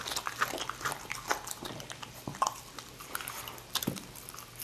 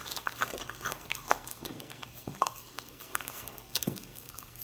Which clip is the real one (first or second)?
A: first